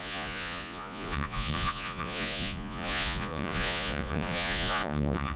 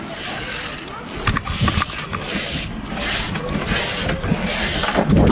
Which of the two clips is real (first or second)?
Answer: second